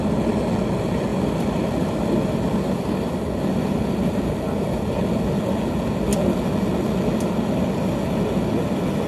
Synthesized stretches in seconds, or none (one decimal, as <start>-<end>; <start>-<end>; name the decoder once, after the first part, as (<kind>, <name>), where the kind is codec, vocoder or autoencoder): 1.1-4.8 (vocoder, BigVGAN v2)